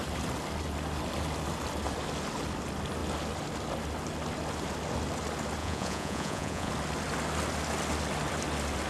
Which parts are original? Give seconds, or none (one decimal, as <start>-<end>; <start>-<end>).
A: 0.0-5.6; 6.7-8.9